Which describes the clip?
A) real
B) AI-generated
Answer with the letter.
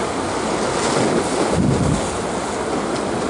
A